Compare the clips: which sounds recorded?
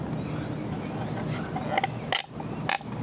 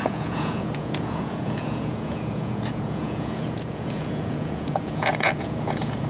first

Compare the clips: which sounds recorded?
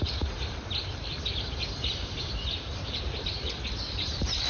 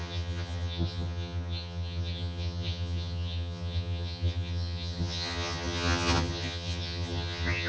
first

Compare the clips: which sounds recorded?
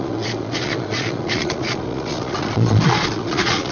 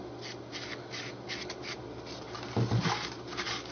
second